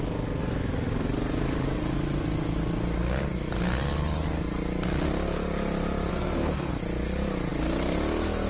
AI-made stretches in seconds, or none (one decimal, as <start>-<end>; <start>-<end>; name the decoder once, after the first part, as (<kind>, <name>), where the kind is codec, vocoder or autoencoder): 6.1-6.7 (codec, SNAC)